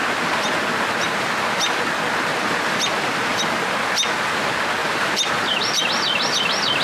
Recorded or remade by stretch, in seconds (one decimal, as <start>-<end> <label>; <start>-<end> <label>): 0.0-2.3 recorded; 2.3-3.4 remade; 3.4-4.8 recorded; 4.8-5.8 remade; 5.8-6.8 recorded